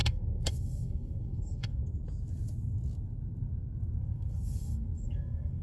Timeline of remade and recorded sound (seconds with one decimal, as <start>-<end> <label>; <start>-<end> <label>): 0.0-1.8 remade; 1.8-4.0 recorded; 4.0-5.6 remade